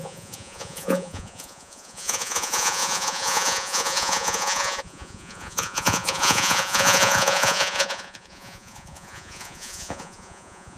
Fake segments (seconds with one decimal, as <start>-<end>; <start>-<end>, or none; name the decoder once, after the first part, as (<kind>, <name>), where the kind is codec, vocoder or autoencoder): 0.0-10.8 (vocoder, Vocos)